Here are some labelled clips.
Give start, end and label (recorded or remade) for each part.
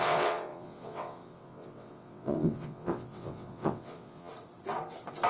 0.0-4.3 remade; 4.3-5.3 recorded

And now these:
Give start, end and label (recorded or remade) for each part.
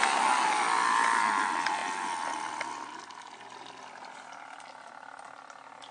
0.0-5.9 recorded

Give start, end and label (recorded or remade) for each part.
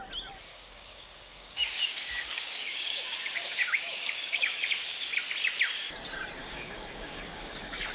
0.0-0.5 recorded; 0.5-5.0 remade; 5.0-6.4 recorded; 6.4-7.9 remade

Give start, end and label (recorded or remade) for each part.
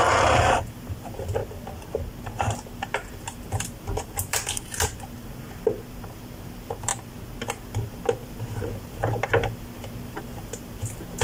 0.0-1.4 remade; 1.4-3.1 recorded; 3.1-6.9 remade; 6.9-7.6 recorded; 7.6-11.2 remade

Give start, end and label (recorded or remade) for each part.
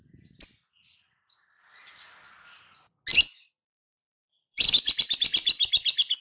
0.0-6.2 recorded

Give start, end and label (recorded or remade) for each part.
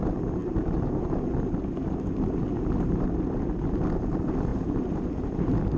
0.0-4.5 recorded; 4.5-5.1 remade; 5.1-5.8 recorded